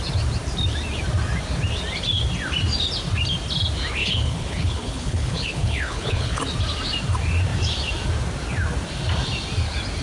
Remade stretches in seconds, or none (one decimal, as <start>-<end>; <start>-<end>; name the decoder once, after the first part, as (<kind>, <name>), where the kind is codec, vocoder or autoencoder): 4.0-6.4 (codec, HILCodec)